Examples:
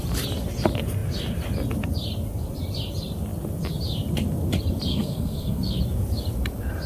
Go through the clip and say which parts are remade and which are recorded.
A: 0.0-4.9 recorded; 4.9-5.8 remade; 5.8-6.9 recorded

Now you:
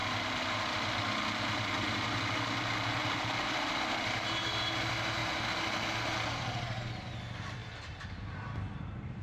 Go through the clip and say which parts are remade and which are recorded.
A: 0.0-3.0 recorded; 3.0-3.7 remade; 3.7-5.2 recorded; 5.2-6.9 remade; 6.9-9.2 recorded